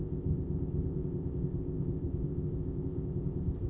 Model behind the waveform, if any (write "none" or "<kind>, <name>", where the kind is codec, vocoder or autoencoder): codec, ZipCodec